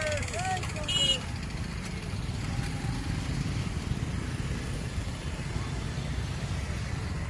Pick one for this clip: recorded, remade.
recorded